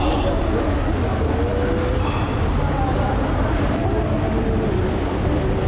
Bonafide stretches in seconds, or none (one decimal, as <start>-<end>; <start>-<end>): 0.0-5.7